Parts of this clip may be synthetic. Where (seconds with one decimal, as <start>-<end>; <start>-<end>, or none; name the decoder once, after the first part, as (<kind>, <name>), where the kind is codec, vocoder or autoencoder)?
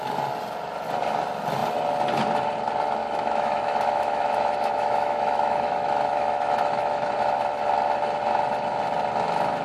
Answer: 3.0-7.1 (autoencoder, DAC-VAE)